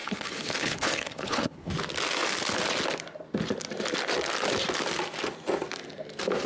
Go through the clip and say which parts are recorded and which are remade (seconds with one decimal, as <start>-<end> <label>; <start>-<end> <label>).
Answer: 0.0-1.7 remade; 1.7-6.5 recorded